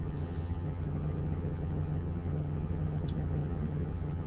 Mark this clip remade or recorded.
remade